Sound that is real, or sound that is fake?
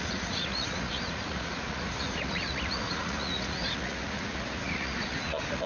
fake